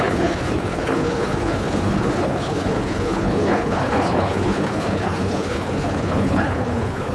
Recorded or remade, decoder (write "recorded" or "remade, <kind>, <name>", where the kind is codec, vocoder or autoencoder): remade, codec, HILCodec